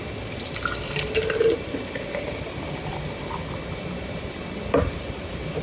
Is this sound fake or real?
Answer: fake